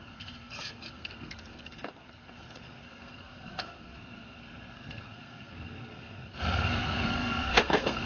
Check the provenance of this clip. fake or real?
fake